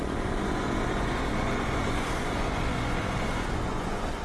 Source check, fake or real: fake